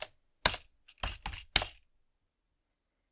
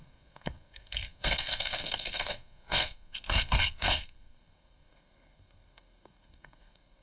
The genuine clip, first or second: first